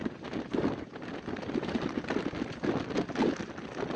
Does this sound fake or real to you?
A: real